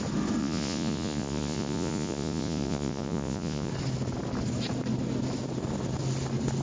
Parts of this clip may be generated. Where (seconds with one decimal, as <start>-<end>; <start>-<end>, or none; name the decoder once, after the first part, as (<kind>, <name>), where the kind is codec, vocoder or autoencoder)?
0.4-3.7 (vocoder, Vocos)